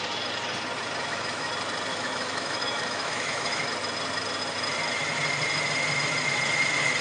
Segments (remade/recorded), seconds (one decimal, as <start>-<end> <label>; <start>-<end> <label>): 0.0-1.0 recorded; 1.0-1.5 remade; 1.5-1.9 recorded; 1.9-3.6 remade; 3.6-7.0 recorded